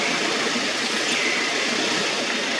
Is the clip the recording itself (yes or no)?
yes